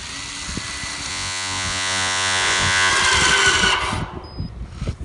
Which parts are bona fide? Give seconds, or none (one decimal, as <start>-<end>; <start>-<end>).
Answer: 0.0-1.1; 2.9-5.0